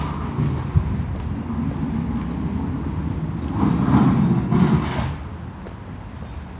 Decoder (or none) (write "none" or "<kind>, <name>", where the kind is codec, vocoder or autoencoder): none